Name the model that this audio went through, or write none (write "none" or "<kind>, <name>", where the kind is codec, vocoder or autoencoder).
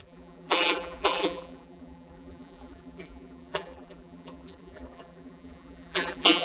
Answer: vocoder, BigVGAN v2